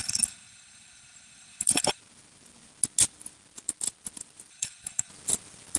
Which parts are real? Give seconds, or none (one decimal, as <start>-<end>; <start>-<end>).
2.0-4.5; 5.1-5.8